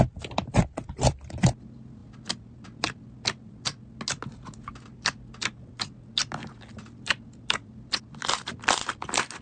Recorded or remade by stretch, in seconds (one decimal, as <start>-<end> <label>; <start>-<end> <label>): 0.0-0.8 recorded; 0.8-1.5 remade; 1.5-6.8 recorded; 6.8-8.5 remade; 8.5-9.4 recorded